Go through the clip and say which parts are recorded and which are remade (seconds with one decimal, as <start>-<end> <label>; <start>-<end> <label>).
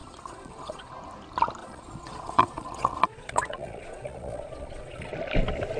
0.0-0.9 remade; 0.9-1.6 recorded; 1.6-5.1 remade; 5.1-5.8 recorded